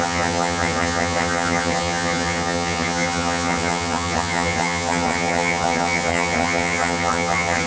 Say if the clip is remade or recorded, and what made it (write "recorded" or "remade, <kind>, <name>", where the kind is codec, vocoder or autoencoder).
remade, vocoder, HiFi-GAN